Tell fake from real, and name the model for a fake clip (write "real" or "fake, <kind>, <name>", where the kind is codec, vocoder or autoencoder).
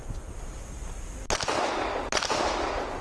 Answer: real